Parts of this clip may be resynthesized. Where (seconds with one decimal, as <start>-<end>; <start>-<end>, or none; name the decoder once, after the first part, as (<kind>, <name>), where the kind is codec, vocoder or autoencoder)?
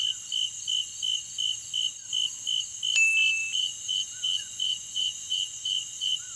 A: 3.5-6.4 (vocoder, Vocos)